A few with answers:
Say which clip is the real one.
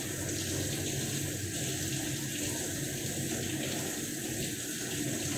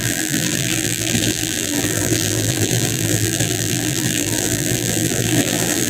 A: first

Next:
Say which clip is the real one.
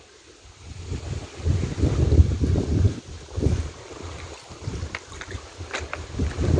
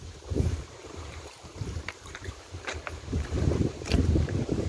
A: first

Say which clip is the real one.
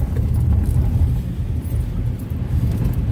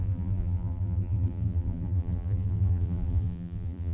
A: first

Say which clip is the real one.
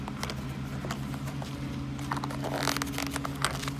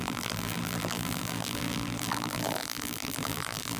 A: first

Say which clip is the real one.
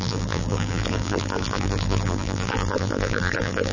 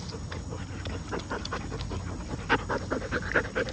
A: second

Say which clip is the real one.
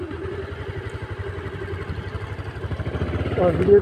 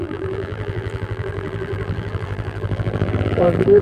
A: first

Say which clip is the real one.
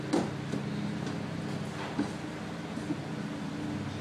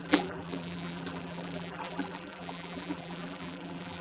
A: first